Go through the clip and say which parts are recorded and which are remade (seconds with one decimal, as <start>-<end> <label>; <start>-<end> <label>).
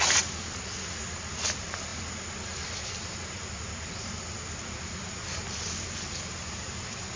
0.0-7.2 recorded